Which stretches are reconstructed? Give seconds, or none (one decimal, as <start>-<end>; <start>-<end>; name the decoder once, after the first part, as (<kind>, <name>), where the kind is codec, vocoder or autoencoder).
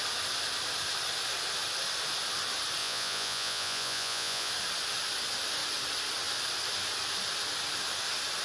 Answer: 2.8-4.5 (vocoder, Vocos)